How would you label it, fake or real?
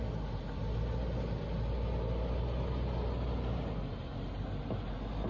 real